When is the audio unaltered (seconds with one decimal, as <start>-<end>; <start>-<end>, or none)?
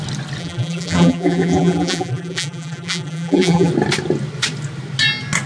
0.0-0.4; 3.7-5.5